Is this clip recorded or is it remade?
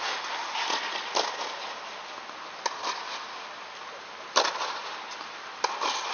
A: recorded